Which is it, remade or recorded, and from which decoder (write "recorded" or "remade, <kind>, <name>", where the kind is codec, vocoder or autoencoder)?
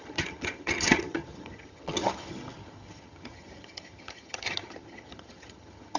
remade, vocoder, HiFi-GAN